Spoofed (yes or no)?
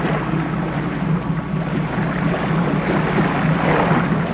no